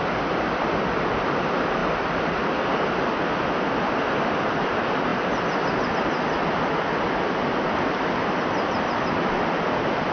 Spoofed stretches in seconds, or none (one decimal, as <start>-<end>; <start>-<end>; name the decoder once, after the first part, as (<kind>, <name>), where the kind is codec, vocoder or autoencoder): none